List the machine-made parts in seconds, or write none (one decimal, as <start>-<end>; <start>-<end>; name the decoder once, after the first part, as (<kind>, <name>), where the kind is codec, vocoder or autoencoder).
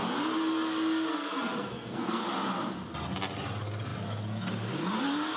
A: 1.1-2.2 (codec, SNAC)